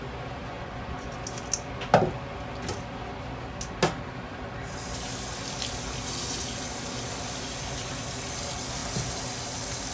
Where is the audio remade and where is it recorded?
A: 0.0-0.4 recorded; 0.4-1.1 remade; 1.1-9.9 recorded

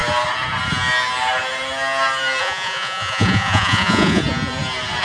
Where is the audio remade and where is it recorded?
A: 0.0-2.4 recorded; 2.4-4.2 remade; 4.2-5.0 recorded

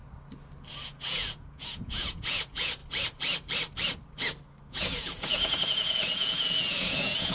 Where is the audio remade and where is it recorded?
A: 0.0-0.7 recorded; 0.7-2.8 remade; 2.8-4.7 recorded; 4.7-7.3 remade

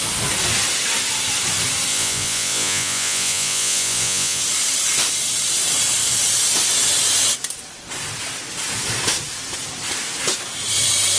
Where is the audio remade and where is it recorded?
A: 0.0-1.9 recorded; 1.9-4.4 remade; 4.4-11.2 recorded